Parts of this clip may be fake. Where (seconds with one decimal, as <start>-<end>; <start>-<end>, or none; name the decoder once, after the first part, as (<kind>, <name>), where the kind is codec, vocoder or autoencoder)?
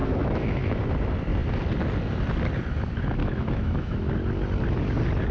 0.0-0.8 (autoencoder, DAC-VAE); 3.2-4.1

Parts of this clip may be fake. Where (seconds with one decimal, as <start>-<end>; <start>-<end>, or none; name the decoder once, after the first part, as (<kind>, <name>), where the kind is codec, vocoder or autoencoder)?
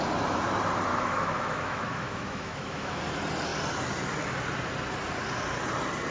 0.9-3.0 (autoencoder, DAC-VAE)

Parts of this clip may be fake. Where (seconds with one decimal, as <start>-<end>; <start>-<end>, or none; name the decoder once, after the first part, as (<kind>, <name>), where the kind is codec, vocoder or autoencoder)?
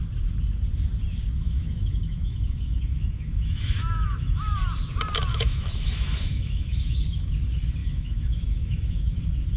1.4-4.5 (autoencoder, DAC-VAE); 5.3-7.3; 7.8-9.2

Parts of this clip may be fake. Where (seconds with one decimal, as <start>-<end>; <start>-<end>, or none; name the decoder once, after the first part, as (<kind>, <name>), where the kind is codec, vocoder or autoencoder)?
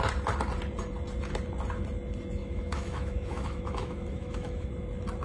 2.4-4.7 (autoencoder, DAC-VAE)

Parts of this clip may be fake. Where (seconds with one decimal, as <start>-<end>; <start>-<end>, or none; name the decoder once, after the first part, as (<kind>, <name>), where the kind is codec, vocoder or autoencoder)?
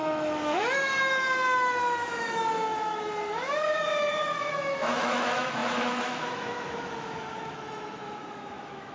0.0-0.9 (autoencoder, DAC-VAE); 2.2-8.9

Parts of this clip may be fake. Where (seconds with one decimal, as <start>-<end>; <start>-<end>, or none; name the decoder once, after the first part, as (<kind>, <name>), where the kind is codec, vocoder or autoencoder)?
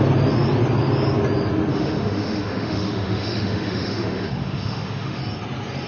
1.7-5.2 (autoencoder, DAC-VAE)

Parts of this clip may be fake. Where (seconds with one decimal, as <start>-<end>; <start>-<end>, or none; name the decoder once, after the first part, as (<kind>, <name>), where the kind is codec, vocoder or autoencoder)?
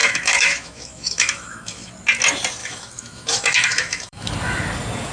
0.0-1.9 (autoencoder, DAC-VAE); 2.6-4.3